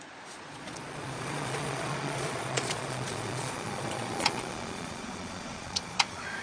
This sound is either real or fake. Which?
fake